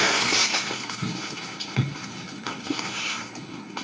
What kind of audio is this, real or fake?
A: fake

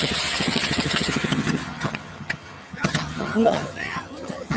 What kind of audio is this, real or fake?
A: fake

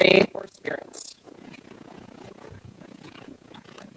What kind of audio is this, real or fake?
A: fake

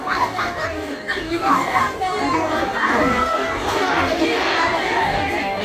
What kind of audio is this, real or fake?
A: fake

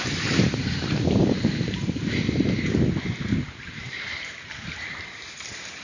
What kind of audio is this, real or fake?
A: fake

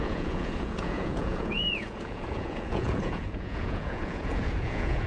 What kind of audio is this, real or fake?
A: fake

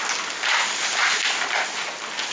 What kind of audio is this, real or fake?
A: real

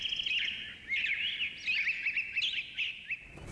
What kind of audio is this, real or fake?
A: real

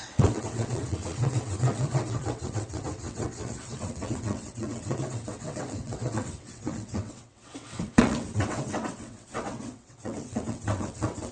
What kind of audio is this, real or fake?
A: fake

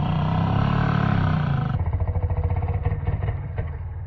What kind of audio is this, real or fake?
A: fake